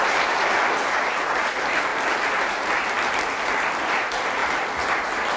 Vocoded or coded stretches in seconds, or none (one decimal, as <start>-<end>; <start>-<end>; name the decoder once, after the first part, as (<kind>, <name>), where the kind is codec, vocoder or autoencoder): 1.9-2.7 (vocoder, BigVGAN v2)